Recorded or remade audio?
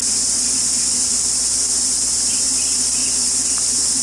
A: remade